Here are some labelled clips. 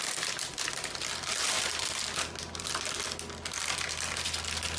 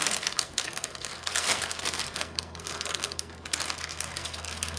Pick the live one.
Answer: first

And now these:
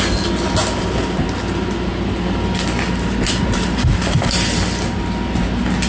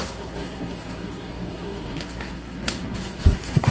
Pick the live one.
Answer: first